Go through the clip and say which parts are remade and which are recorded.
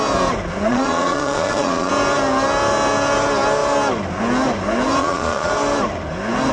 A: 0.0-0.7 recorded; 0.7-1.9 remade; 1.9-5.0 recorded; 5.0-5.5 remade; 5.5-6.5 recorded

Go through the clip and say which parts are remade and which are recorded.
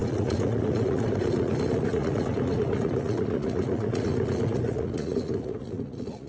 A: 0.0-6.3 remade